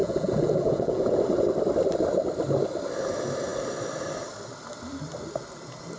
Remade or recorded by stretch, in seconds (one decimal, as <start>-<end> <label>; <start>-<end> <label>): 0.0-1.2 remade; 1.2-6.0 recorded